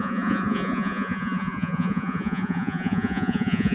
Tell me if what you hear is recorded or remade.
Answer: remade